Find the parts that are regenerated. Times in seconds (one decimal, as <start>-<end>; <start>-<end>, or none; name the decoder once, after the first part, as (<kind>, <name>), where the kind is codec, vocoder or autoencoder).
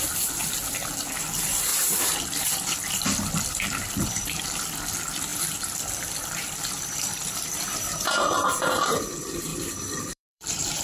1.7-4.6 (vocoder, BigVGAN v2); 5.3-7.6; 9.5-10.8